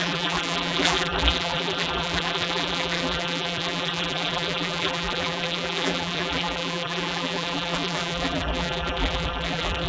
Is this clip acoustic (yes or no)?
no